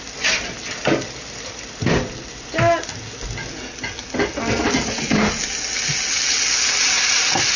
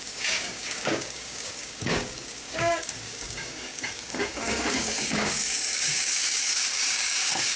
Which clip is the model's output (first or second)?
second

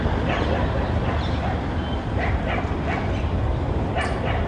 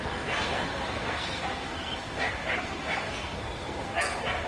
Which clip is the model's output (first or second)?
second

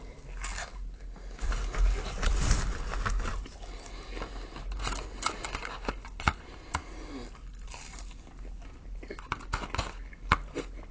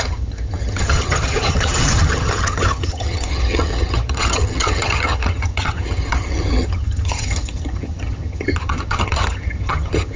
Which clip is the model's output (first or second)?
second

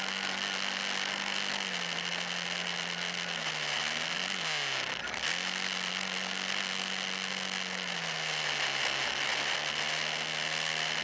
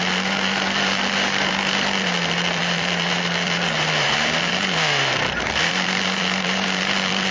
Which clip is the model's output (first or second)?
second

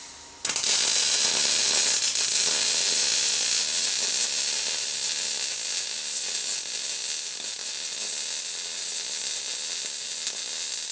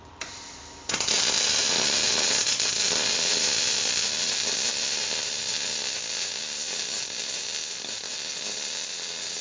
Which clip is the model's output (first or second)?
second